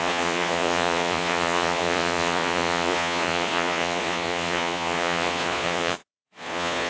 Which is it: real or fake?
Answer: fake